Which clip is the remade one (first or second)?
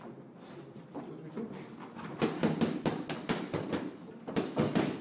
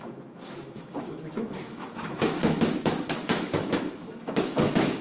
second